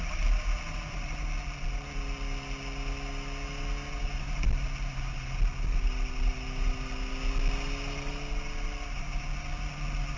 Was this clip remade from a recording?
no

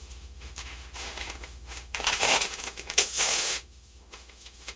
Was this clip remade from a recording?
yes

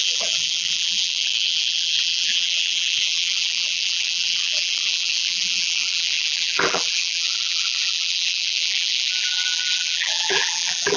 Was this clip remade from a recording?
yes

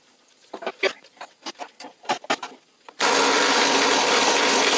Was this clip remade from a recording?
no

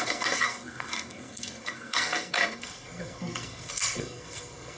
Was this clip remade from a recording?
yes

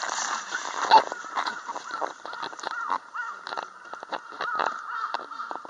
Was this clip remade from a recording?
yes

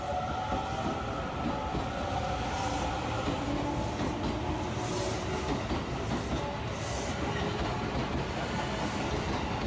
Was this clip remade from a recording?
no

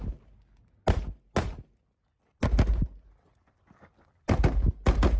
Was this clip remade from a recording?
no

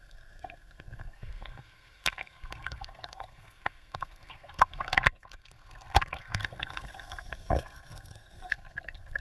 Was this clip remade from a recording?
yes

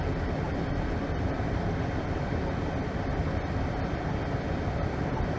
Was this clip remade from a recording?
no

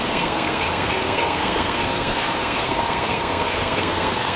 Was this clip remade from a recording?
yes